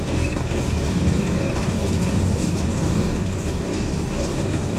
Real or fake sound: fake